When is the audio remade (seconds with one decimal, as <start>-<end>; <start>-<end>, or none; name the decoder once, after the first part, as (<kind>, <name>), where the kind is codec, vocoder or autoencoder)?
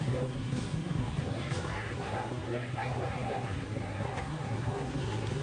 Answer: 0.0-5.4 (codec, SNAC)